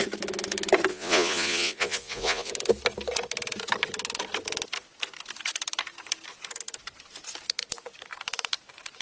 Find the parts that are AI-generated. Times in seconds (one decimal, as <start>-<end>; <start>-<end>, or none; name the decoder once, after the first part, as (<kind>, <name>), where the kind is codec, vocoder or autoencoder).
0.9-2.5 (vocoder, Vocos)

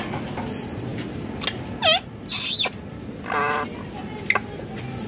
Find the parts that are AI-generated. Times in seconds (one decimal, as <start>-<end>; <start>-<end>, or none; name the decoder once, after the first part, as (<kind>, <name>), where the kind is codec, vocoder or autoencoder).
none

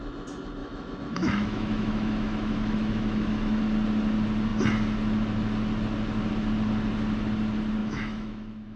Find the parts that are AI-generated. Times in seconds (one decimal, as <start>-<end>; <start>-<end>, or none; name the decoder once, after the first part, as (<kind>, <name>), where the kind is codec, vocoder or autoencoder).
0.6-3.6 (autoencoder, DAC-VAE); 7.8-8.8